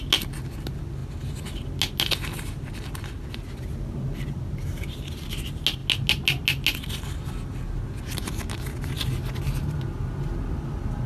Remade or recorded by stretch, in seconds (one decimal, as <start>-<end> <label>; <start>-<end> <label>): 0.0-11.1 recorded